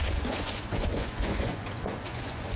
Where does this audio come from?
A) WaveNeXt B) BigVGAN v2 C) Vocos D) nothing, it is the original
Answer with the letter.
C